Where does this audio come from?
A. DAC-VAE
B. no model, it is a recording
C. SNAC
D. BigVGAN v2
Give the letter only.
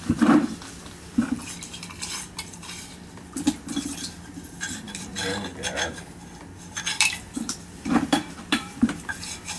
D